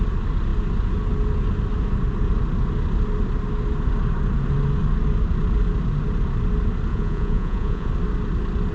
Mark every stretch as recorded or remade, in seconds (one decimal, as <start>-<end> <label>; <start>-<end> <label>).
0.0-6.9 recorded; 6.9-7.9 remade; 7.9-8.7 recorded